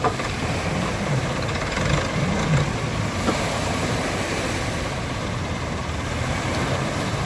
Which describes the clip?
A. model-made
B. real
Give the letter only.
B